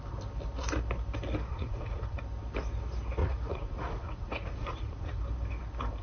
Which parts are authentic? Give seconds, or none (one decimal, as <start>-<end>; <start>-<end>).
0.0-1.5; 2.2-3.2; 5.2-6.0